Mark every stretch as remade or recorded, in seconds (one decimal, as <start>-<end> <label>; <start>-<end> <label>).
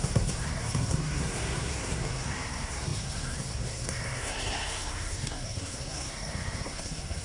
0.0-7.2 remade